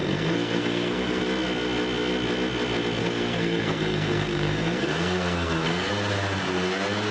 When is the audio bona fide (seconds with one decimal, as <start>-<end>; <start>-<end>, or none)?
1.2-3.0; 5.9-7.1